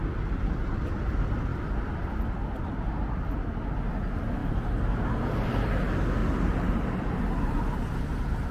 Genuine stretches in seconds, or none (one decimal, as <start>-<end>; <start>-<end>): 0.0-4.4; 5.0-6.2; 7.2-8.5